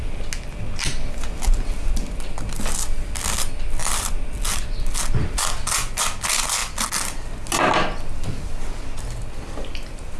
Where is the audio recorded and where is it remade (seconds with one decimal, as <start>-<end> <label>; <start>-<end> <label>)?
0.0-10.2 recorded